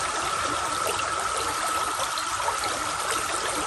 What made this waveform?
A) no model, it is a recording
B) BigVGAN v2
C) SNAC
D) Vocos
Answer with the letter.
A